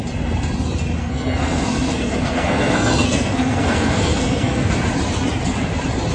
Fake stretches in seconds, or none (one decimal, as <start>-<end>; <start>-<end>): 1.0-4.7